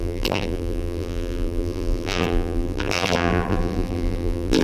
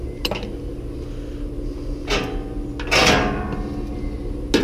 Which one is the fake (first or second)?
first